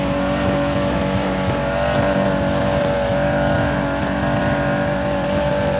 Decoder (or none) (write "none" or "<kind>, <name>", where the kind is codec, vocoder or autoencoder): none